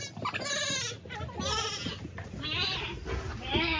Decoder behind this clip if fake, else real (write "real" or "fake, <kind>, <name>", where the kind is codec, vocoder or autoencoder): real